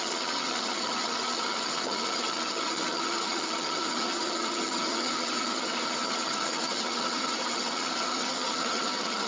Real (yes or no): no